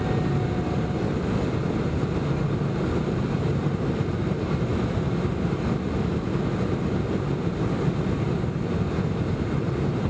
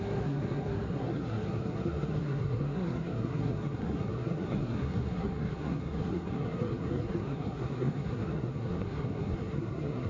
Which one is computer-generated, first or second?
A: second